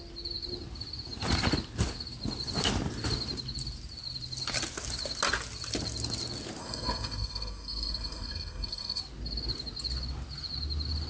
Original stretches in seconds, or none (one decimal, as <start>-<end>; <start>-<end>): 0.0-6.6; 9.0-11.1